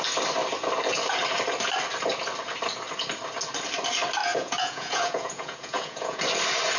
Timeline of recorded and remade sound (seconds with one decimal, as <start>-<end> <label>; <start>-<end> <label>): 0.0-4.2 recorded; 4.2-6.2 remade; 6.2-6.8 recorded